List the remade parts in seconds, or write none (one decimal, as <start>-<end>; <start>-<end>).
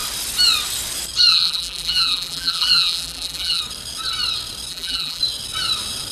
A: 1.3-3.6; 4.7-5.2